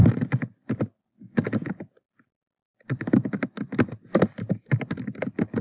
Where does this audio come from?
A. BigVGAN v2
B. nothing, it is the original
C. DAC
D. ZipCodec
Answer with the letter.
B